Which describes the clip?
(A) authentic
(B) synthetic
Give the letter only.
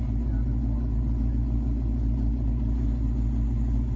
A